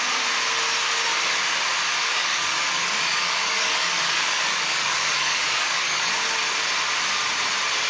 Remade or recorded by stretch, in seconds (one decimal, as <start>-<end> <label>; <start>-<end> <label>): 0.0-2.0 recorded; 2.0-6.1 remade; 6.1-7.9 recorded

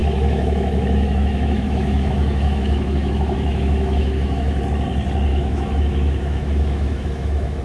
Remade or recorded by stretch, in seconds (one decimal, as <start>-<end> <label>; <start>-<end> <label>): 0.0-4.6 remade; 4.6-5.3 recorded; 5.3-7.6 remade

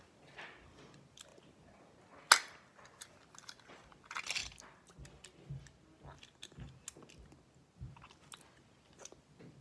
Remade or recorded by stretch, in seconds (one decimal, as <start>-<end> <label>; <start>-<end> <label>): 0.0-9.6 recorded

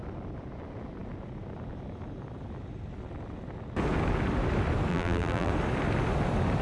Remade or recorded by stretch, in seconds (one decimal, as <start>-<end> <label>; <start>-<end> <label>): 0.0-4.9 recorded; 4.9-5.5 remade; 5.5-6.6 recorded

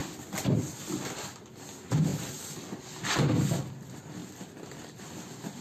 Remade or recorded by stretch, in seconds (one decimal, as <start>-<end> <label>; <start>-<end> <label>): 0.0-5.6 recorded

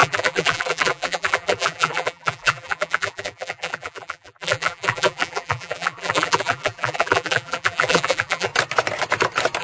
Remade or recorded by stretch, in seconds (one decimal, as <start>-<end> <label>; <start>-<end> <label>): 0.0-8.5 remade; 8.5-9.6 recorded

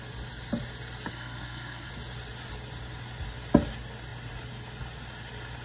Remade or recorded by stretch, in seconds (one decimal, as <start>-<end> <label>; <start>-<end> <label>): 0.0-1.1 recorded; 1.1-1.9 remade; 1.9-5.6 recorded

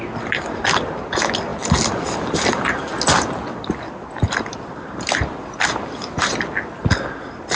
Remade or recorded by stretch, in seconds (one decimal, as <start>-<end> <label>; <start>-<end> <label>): 0.0-7.5 recorded